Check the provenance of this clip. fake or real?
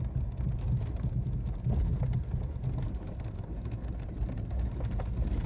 real